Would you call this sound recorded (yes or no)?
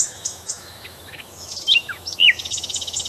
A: no